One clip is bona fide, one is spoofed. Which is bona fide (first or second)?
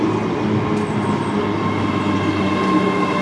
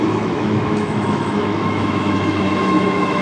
first